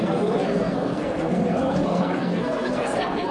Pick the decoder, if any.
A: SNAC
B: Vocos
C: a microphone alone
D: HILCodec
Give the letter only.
A